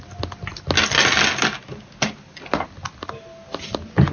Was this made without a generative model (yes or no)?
yes